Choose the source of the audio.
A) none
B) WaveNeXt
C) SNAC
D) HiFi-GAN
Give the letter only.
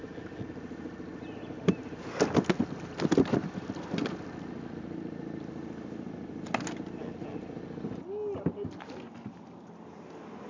A